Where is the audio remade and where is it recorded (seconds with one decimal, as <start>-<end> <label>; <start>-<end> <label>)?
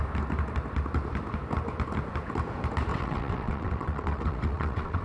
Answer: 0.0-2.9 recorded; 2.9-5.0 remade